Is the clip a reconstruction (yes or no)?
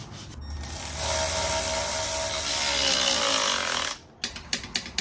no